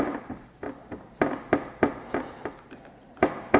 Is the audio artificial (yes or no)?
no